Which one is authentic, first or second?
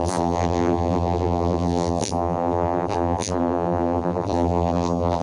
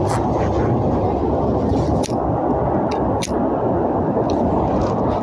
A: second